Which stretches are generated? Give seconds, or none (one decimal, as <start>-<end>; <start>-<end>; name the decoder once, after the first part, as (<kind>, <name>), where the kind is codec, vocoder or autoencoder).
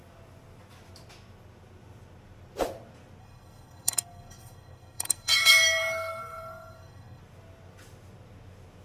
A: 3.2-7.2 (codec, SNAC)